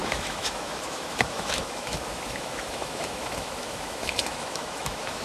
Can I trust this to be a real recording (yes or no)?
no